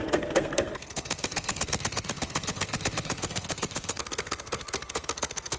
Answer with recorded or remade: remade